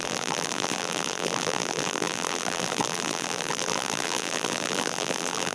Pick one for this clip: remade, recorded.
remade